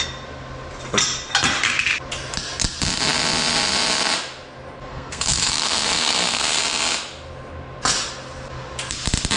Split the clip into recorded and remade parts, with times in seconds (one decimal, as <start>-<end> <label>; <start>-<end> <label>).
0.0-4.9 recorded; 4.9-6.6 remade; 6.6-9.4 recorded